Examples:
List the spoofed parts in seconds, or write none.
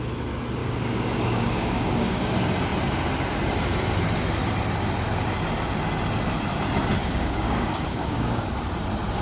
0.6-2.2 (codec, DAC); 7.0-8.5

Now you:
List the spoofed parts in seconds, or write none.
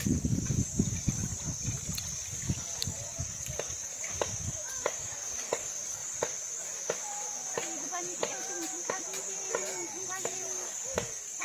0.0-1.3 (codec, DAC); 2.2-6.0; 9.5-11.4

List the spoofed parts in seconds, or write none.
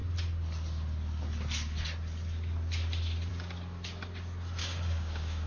4.6-5.5 (codec, DAC)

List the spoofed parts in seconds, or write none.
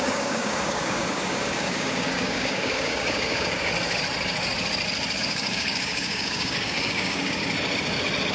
0.0-3.7 (codec, DAC); 5.2-7.4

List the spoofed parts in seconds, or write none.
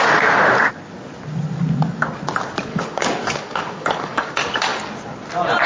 2.7-4.3 (codec, DAC)